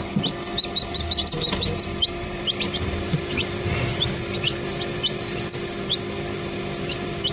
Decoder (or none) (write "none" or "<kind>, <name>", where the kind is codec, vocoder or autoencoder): vocoder, BigVGAN v2